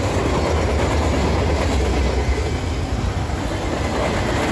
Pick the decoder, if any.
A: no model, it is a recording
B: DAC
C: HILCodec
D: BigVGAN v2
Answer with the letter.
A